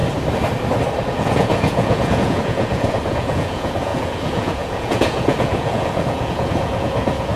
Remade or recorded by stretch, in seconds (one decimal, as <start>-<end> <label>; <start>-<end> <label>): 0.0-1.1 recorded; 1.1-7.4 remade